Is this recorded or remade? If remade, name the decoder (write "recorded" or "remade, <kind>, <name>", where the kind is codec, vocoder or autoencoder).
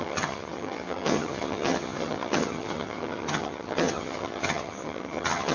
remade, vocoder, HiFi-GAN